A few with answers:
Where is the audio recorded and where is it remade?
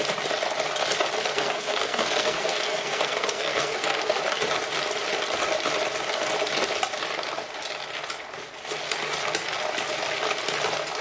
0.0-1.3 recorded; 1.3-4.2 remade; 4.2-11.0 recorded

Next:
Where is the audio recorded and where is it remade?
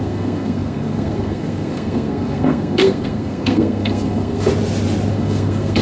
0.0-4.5 remade; 4.5-5.1 recorded; 5.1-5.8 remade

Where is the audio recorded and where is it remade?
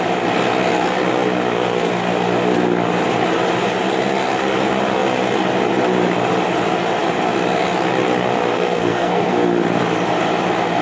0.0-8.5 recorded; 8.5-9.5 remade; 9.5-10.8 recorded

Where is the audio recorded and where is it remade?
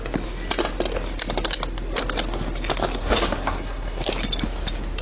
0.0-2.9 recorded; 2.9-4.0 remade; 4.0-5.0 recorded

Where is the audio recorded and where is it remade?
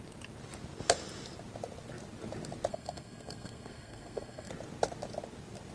0.0-2.7 recorded; 2.7-4.5 remade; 4.5-5.7 recorded